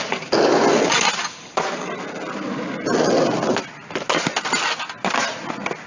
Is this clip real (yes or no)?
yes